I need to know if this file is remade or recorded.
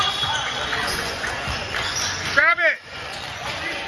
remade